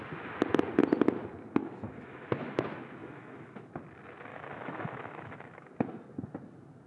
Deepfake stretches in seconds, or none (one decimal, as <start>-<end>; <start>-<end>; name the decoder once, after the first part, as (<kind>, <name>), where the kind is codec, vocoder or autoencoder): 1.6-2.6 (autoencoder, DAC-VAE); 3.0-3.7; 4.3-5.7